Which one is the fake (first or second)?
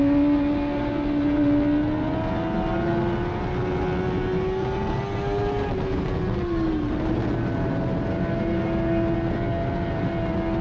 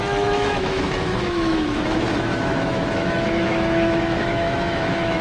second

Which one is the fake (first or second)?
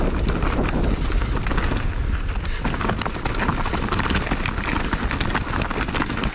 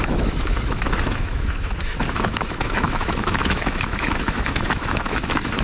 second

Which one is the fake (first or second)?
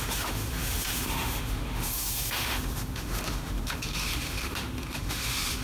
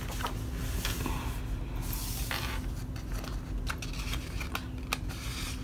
first